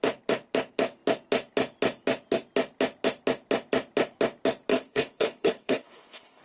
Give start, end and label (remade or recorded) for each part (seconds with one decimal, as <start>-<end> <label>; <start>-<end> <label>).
0.0-4.7 recorded; 4.7-6.4 remade